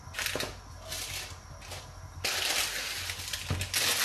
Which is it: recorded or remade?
recorded